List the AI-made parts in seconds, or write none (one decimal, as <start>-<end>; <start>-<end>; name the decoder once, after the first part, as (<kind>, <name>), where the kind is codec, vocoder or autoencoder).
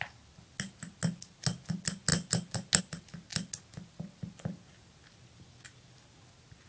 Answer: none